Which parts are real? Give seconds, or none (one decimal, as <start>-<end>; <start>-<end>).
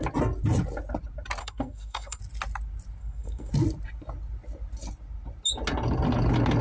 0.0-1.4; 2.2-3.0; 3.5-6.6